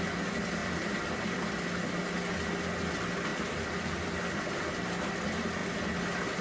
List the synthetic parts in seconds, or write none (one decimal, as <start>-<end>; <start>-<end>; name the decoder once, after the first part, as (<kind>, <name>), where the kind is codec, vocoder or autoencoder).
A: 0.6-1.1 (vocoder, BigVGAN v2)